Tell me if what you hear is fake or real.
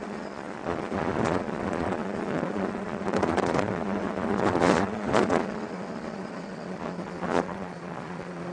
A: fake